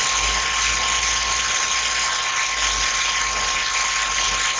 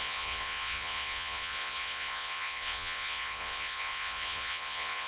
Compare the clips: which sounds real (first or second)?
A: first